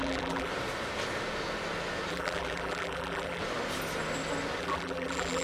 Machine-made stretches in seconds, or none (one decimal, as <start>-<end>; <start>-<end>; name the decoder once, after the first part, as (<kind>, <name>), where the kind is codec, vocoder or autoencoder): 0.0-0.5 (vocoder, BigVGAN v2); 2.1-3.4; 4.6-5.4